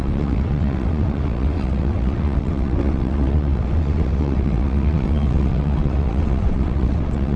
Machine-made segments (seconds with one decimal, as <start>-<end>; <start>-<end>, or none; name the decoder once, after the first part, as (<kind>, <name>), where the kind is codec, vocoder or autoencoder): 0.0-7.4 (vocoder, WaveNeXt)